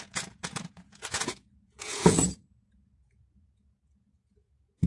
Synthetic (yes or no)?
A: yes